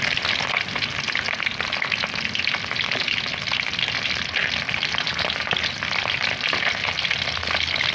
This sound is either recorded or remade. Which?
recorded